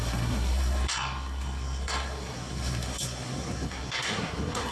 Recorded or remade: remade